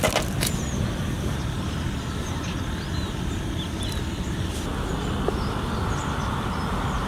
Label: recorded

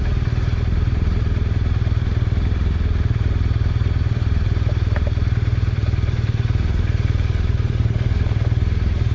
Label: remade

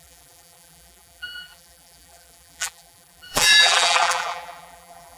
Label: remade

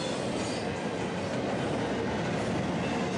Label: remade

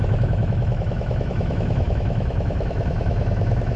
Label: remade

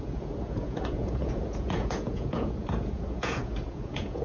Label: remade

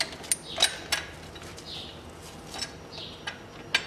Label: recorded